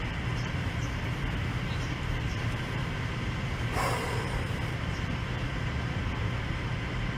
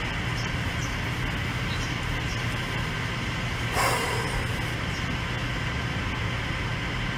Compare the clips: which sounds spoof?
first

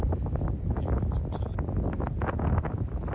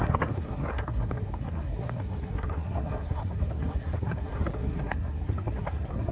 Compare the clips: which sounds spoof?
second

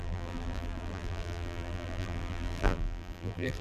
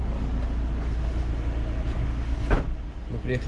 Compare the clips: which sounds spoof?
first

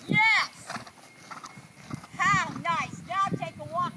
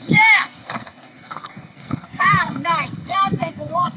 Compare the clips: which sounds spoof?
second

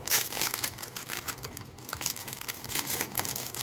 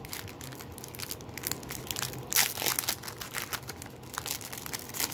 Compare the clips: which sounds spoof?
first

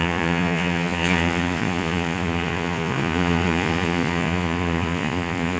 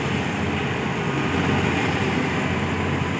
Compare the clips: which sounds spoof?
first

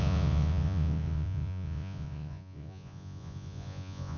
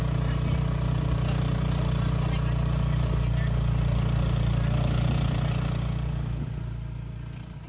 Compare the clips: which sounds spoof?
first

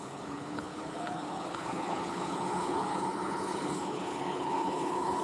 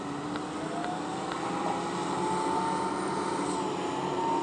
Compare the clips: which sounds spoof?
first